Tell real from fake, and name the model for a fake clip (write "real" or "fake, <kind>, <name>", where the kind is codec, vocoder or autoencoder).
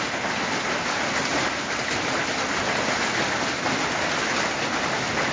real